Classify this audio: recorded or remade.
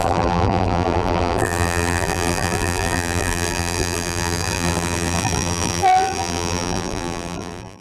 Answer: remade